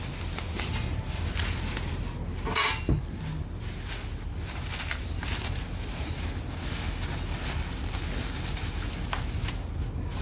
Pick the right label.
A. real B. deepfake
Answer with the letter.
A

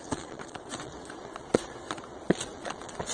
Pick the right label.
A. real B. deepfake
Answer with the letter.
B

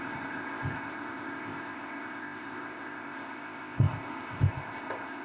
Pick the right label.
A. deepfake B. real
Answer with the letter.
A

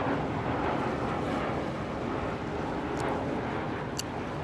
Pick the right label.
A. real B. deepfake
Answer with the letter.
A